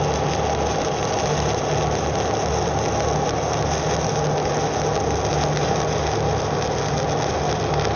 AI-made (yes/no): no